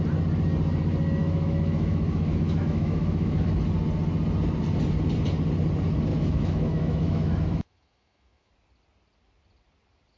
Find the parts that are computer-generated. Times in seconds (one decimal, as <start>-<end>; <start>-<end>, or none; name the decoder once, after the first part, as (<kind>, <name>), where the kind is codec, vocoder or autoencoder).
1.2-3.6 (autoencoder, DAC-VAE); 6.1-8.5